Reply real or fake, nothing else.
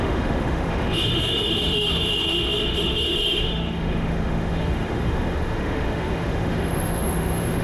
fake